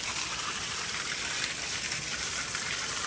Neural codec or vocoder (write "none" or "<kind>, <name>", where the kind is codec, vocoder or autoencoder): none